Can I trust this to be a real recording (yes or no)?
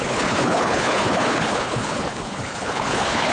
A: no